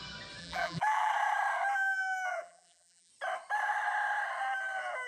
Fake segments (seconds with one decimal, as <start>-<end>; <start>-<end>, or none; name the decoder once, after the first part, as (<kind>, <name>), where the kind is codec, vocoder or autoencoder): 0.4-1.1 (vocoder, BigVGAN v2); 2.3-3.1